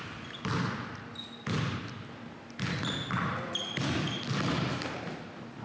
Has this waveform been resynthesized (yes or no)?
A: no